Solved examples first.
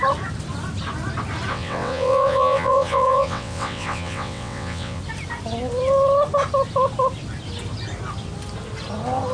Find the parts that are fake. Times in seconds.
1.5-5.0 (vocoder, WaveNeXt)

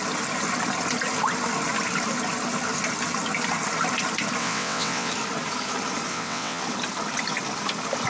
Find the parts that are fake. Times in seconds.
4.4-5.1 (vocoder, WaveNeXt); 6.1-6.6

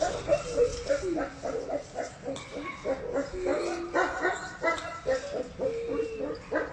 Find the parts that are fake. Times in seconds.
none

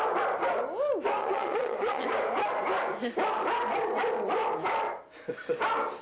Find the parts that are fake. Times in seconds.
1.2-2.1 (vocoder, WaveNeXt)